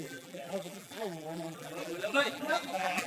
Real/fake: fake